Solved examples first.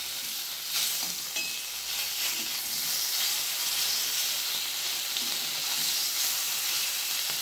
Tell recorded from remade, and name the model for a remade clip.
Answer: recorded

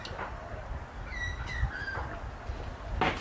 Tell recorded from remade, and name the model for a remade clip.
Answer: recorded